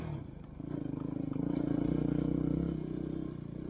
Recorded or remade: recorded